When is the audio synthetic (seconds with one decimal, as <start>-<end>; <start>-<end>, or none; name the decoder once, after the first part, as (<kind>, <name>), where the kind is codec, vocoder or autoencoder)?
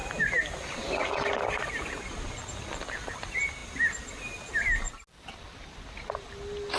none